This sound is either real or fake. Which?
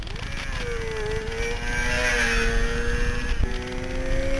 real